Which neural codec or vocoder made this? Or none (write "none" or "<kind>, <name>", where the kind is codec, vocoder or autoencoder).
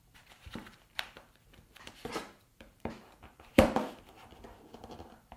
vocoder, BigVGAN v2